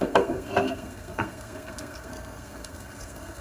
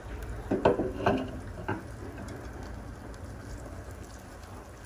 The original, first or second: second